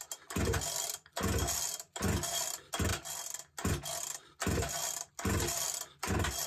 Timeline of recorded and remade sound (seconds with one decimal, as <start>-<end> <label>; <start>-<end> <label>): 0.0-6.5 recorded